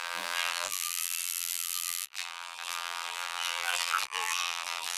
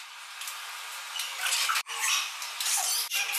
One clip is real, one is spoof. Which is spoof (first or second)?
first